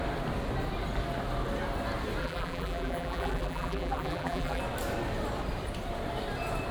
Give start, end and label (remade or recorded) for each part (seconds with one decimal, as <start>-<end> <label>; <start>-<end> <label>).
0.0-2.2 recorded; 2.2-4.6 remade; 4.6-6.7 recorded